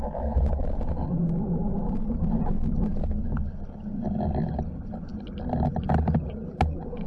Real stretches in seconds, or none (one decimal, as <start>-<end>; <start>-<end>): 0.0-7.1